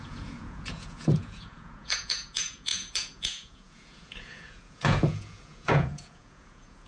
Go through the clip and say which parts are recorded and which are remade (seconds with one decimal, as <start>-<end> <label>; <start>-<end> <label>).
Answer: 0.0-6.9 remade